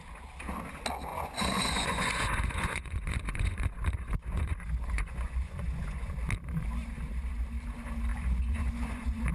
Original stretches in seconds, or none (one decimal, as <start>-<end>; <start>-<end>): 0.0-1.1; 6.1-8.1